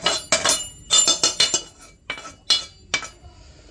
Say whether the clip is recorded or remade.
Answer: recorded